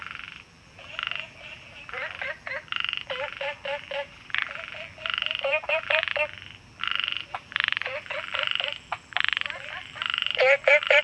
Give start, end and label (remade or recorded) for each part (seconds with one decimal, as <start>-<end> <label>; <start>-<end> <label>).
0.0-11.0 remade